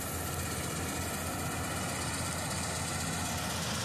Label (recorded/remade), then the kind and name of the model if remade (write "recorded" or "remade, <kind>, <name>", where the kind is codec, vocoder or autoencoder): recorded